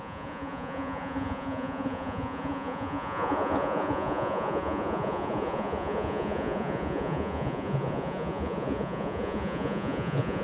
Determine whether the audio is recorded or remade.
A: remade